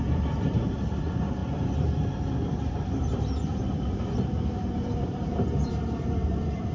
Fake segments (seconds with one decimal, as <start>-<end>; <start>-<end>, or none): 0.0-6.7